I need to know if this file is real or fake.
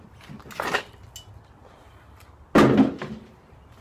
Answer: real